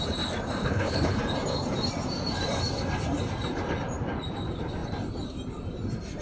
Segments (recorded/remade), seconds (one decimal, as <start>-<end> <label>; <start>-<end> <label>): 0.0-0.6 recorded; 0.6-1.2 remade; 1.2-6.2 recorded